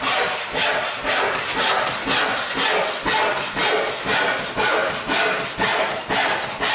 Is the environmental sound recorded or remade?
recorded